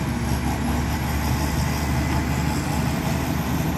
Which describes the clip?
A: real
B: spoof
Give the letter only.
A